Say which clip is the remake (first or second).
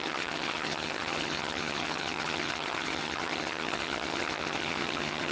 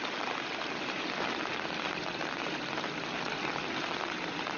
first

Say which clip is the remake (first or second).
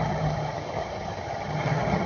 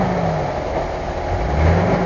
first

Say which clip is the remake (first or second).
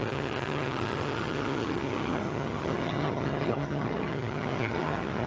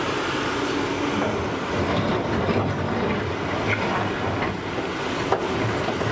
first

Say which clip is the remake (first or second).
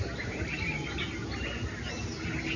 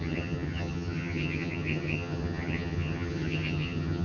second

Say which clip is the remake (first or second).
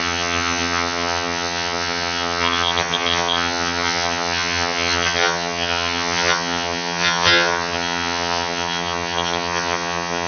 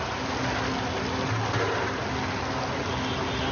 first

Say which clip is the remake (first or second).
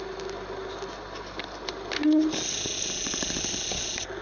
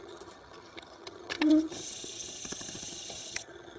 second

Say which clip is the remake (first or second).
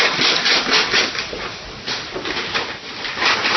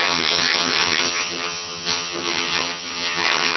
second